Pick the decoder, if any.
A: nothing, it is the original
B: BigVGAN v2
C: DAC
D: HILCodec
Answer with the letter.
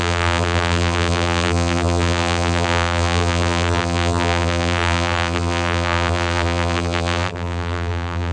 B